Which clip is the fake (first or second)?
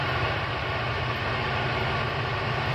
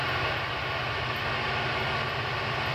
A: first